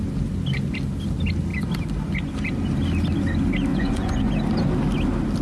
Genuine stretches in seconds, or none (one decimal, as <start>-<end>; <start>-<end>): 0.0-3.7; 4.3-5.4